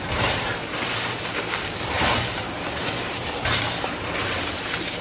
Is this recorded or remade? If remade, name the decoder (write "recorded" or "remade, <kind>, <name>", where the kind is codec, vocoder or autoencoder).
remade, vocoder, BigVGAN v2